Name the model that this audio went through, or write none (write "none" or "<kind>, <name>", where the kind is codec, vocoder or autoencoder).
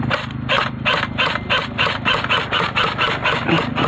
none